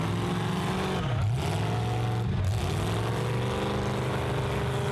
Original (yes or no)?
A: yes